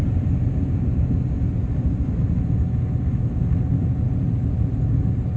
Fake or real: real